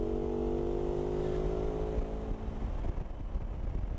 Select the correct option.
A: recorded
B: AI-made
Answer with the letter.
A